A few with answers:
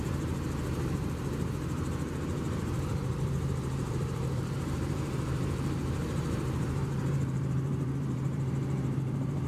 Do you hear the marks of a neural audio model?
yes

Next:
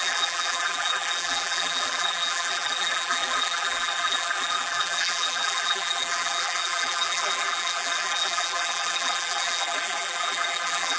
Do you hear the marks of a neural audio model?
yes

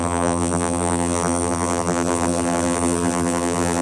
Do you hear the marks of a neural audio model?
yes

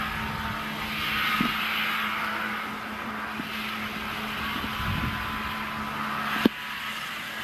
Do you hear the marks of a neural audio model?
no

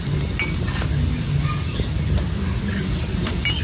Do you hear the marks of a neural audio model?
no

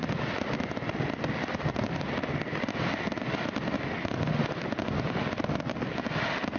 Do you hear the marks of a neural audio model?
no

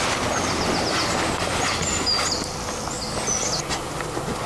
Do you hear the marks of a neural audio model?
no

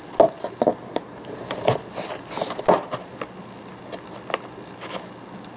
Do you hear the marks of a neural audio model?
no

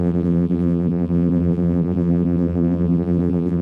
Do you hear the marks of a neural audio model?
yes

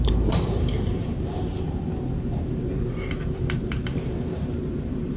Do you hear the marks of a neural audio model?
yes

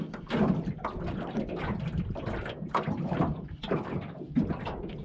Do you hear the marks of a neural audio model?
yes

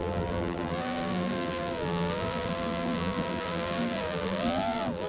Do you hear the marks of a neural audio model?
yes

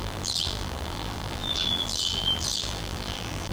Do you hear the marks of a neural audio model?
yes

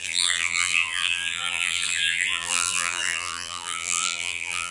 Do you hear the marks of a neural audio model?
yes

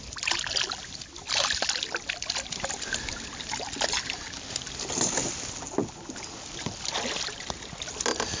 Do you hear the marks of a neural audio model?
no